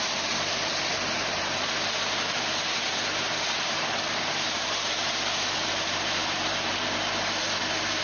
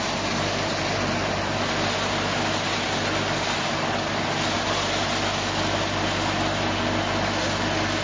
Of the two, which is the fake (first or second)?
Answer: first